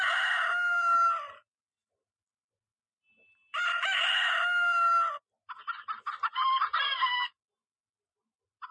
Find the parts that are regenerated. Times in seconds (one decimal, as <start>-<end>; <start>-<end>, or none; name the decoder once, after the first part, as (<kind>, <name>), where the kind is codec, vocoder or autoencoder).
none